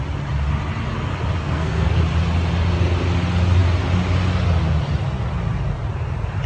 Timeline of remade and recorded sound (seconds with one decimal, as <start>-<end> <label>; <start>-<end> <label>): 0.0-1.4 recorded; 1.4-2.0 remade; 2.0-6.5 recorded